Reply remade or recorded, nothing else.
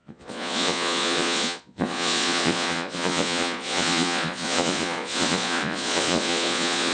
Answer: remade